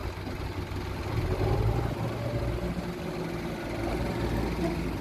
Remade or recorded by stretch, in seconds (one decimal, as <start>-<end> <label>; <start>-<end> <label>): 0.0-5.0 recorded